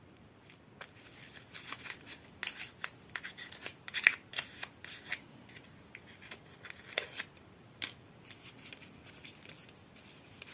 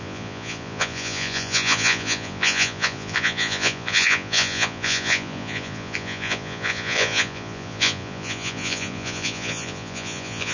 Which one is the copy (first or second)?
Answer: second